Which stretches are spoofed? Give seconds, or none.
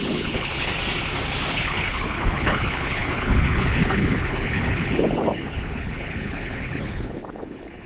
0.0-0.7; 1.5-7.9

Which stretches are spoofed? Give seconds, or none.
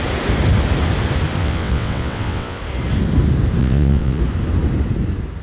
1.4-2.6; 3.6-4.2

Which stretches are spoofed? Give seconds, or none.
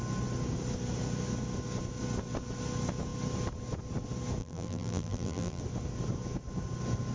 4.4-5.6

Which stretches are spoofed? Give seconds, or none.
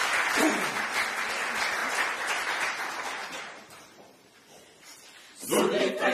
1.8-2.8; 3.2-4.4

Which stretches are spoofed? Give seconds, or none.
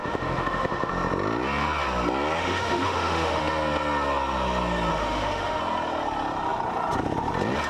0.0-0.9; 2.4-3.4; 4.9-5.6